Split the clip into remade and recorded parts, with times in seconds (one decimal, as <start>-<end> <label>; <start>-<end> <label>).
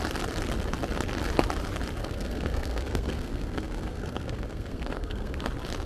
0.0-2.0 recorded; 2.0-5.4 remade; 5.4-5.9 recorded